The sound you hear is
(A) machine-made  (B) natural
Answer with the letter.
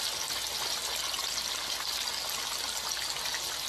B